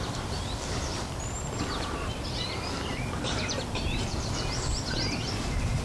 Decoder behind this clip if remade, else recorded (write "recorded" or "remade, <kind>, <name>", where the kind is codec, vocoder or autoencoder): remade, vocoder, BigVGAN v2